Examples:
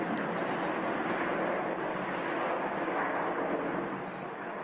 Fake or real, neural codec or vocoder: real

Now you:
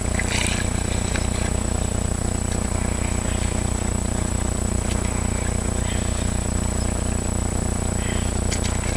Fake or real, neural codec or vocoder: real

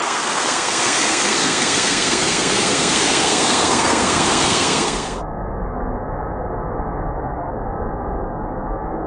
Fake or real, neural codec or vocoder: fake, codec, SNAC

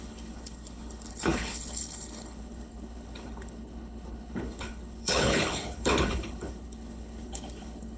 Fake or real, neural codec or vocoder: fake, codec, HILCodec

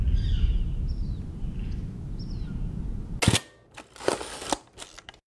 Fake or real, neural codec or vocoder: real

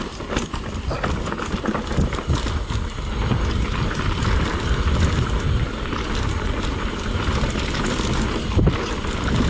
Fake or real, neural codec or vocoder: real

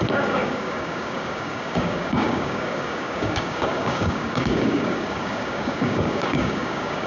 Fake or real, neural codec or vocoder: fake, codec, DAC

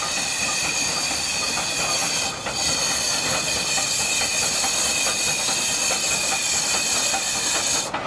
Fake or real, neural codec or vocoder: real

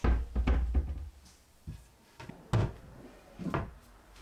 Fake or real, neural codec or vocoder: real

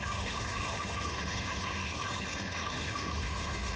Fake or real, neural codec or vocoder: fake, autoencoder, DAC-VAE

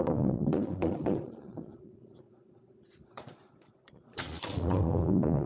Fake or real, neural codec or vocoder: fake, vocoder, Vocos